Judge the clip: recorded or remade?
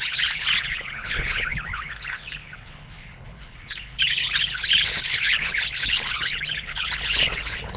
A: remade